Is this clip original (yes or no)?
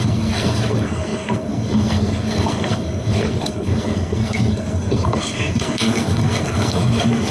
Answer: no